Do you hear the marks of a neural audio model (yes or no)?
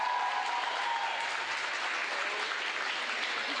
no